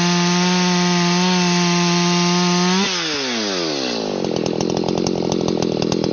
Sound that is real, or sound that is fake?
real